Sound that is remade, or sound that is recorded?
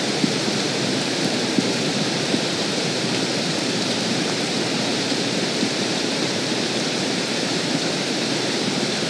remade